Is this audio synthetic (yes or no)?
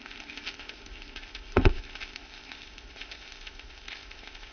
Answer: yes